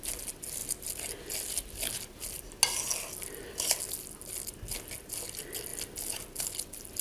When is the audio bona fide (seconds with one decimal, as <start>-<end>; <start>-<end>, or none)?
0.0-7.0